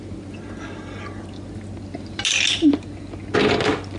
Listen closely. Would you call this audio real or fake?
real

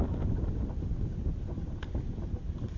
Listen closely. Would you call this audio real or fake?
real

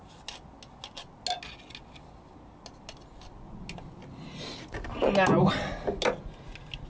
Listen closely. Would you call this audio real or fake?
real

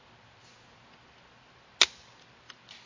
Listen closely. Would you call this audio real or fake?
real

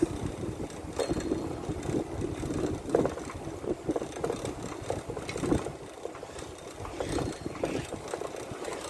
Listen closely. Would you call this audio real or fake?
real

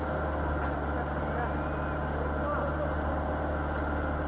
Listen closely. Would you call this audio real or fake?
real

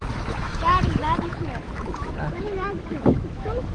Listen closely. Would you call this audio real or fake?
fake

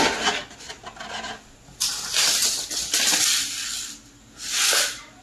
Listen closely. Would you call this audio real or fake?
real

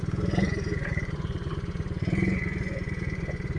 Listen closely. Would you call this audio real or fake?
fake